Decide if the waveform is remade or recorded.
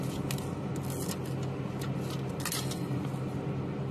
recorded